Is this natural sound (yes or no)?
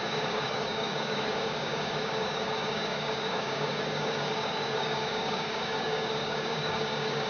no